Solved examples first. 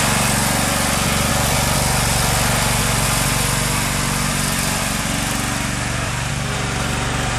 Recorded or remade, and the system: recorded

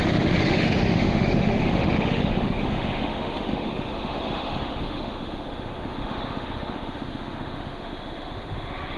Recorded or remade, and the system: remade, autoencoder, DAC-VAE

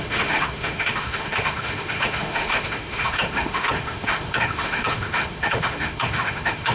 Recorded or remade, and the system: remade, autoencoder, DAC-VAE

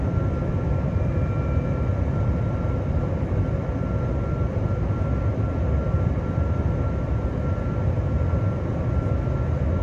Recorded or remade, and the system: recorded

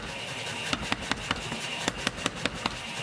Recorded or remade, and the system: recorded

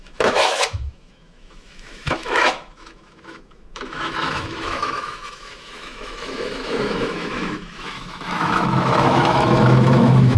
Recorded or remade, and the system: remade, autoencoder, DAC-VAE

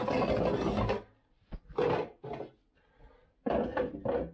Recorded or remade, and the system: recorded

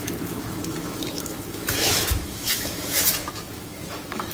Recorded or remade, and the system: remade, autoencoder, DAC-VAE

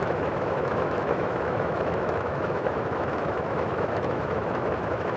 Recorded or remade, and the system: remade, autoencoder, DAC-VAE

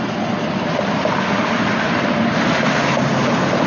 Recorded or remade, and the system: recorded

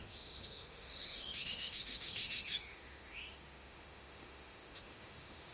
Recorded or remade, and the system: remade, autoencoder, DAC-VAE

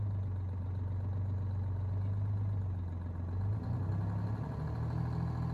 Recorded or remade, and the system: recorded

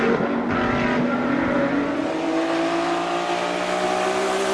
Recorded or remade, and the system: recorded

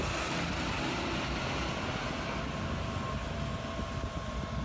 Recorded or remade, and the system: recorded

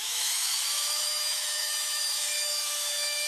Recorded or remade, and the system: remade, autoencoder, DAC-VAE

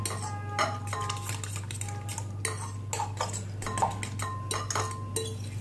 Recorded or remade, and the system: recorded